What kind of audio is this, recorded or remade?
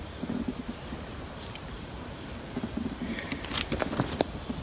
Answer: recorded